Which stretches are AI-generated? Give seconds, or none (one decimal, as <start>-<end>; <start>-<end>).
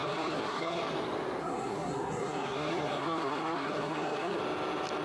0.0-0.8; 1.4-4.4